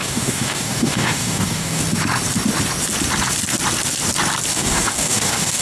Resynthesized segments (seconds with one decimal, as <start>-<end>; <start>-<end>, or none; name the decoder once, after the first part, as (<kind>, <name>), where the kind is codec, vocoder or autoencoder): 0.0-1.8 (codec, DAC); 4.5-5.6